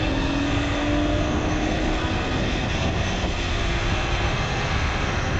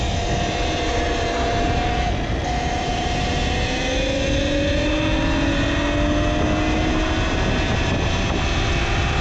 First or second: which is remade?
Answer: first